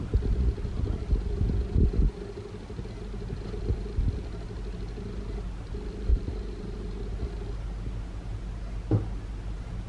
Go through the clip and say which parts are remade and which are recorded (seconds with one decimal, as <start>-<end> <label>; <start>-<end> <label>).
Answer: 0.0-6.1 recorded; 6.1-7.2 remade; 7.2-9.9 recorded